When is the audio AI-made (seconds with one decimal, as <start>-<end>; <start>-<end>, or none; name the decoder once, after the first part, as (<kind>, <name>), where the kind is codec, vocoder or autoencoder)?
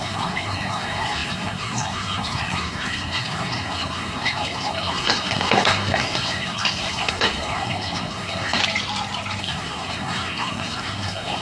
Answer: 0.0-8.6 (codec, SNAC); 9.4-11.4